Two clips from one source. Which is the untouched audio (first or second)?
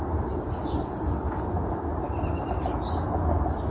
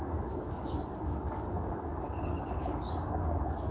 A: first